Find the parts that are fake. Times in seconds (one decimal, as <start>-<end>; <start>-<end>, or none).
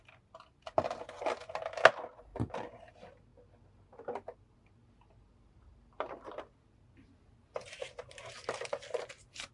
2.3-2.9; 7.8-8.4